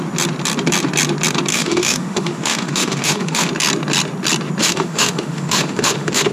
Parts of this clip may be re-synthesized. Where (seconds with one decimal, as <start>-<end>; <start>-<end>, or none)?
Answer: 1.5-3.5; 4.6-6.3